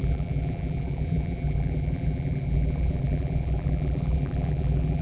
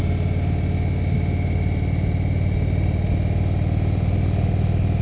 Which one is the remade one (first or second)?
first